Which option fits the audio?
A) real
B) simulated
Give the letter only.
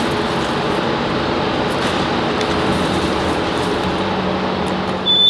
B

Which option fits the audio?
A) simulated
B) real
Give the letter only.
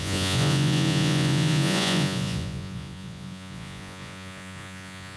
A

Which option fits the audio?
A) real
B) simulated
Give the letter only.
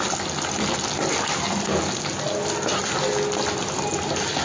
A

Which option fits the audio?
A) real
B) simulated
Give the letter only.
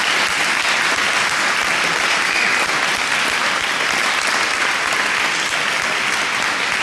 A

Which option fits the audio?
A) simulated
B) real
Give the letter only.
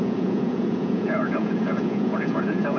A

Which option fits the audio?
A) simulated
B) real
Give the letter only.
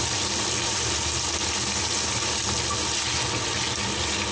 B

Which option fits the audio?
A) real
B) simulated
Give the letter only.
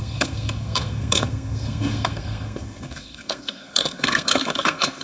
B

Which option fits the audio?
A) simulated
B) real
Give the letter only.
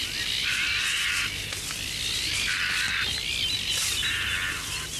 B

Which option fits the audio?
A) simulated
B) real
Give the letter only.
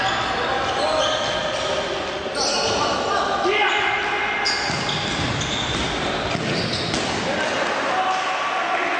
B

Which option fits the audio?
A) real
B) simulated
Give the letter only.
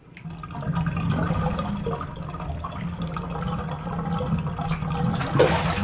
A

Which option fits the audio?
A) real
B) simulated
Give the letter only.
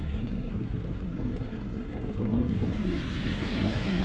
B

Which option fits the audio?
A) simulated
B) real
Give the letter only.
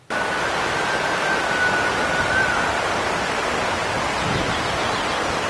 B